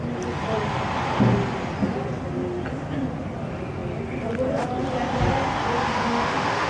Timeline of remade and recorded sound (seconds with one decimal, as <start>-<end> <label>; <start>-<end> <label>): 0.0-5.9 recorded; 5.9-6.7 remade